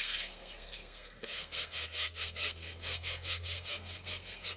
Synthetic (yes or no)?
yes